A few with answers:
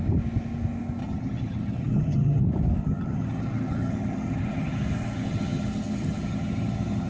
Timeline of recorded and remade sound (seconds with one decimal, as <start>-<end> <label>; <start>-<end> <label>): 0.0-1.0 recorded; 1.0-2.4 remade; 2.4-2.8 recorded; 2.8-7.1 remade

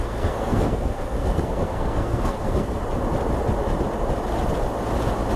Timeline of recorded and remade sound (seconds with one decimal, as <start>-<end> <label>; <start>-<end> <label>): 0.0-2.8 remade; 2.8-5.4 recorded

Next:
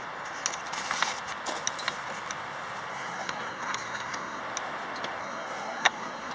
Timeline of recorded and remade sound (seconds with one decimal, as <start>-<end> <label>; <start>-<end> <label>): 0.0-2.9 recorded; 2.9-4.4 remade; 4.4-5.2 recorded; 5.2-6.3 remade